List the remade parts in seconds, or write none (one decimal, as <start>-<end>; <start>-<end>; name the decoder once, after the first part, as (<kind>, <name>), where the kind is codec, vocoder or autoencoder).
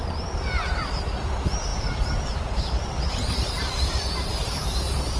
1.7-3.7 (vocoder, BigVGAN v2)